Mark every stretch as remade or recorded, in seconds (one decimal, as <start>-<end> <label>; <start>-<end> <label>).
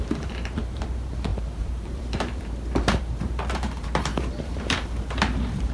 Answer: 0.0-5.7 remade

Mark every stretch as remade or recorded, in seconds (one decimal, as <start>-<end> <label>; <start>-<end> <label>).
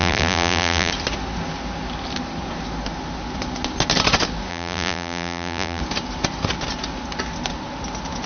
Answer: 0.0-0.9 remade; 0.9-4.5 recorded; 4.5-5.8 remade; 5.8-8.3 recorded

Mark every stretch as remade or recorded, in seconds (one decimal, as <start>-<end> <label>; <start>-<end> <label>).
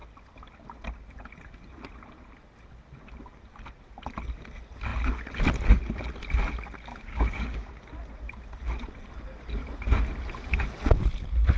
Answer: 0.0-6.9 recorded; 6.9-7.8 remade; 7.8-11.6 recorded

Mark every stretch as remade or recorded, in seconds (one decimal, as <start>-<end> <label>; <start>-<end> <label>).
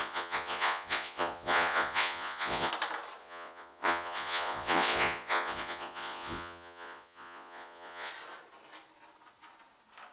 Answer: 0.0-2.7 remade; 2.7-3.2 recorded; 3.2-8.1 remade; 8.1-10.1 recorded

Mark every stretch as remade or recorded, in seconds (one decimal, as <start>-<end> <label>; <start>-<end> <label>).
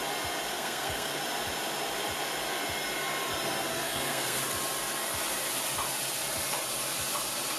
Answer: 0.0-0.5 recorded; 0.5-1.2 remade; 1.2-3.7 recorded; 3.7-4.4 remade; 4.4-7.6 recorded